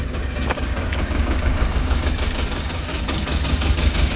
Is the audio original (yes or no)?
no